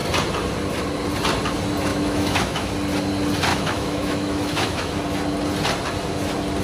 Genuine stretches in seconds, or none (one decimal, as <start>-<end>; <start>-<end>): 0.0-1.9; 2.7-3.5; 4.9-6.6